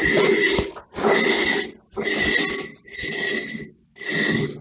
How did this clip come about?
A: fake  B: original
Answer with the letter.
B